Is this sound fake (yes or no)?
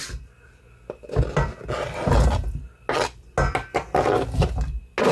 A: no